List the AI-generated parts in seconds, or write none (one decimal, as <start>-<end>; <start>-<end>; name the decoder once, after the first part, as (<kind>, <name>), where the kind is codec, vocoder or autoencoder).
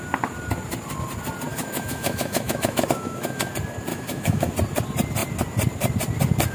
1.5-3.5 (autoencoder, DAC-VAE); 3.9-4.5